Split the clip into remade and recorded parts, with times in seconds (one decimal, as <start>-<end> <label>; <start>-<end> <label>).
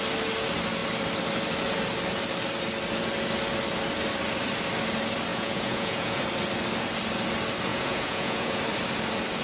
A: 0.0-5.3 recorded; 5.3-6.2 remade; 6.2-7.7 recorded; 7.7-8.6 remade; 8.6-9.4 recorded